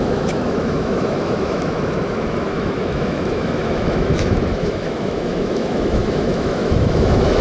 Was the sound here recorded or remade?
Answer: remade